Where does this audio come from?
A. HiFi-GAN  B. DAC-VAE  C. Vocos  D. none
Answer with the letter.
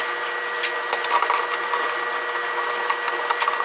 D